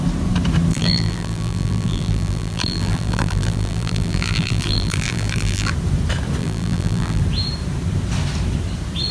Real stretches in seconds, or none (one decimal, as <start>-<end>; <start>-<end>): 0.0-0.7; 5.7-6.4; 7.2-9.1